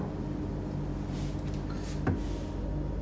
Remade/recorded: recorded